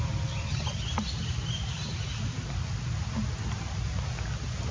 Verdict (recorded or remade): recorded